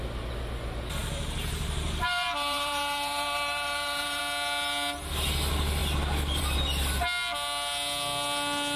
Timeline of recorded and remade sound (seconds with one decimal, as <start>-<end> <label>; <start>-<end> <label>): 0.0-1.0 recorded; 1.0-4.2 remade; 4.2-8.8 recorded